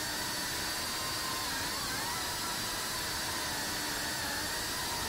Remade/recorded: recorded